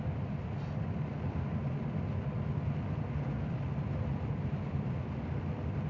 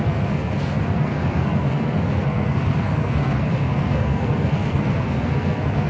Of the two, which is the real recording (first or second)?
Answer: first